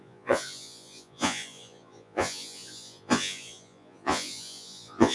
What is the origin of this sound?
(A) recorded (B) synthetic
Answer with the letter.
B